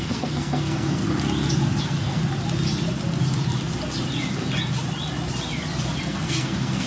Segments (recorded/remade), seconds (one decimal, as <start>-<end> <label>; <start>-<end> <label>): 0.0-1.0 remade; 1.0-1.8 recorded; 1.8-2.2 remade; 2.2-6.0 recorded; 6.0-6.9 remade